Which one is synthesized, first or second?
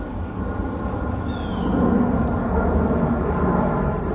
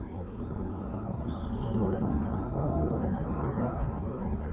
second